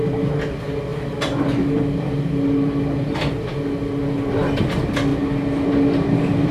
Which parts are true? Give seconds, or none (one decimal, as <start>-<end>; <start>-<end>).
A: 0.0-6.5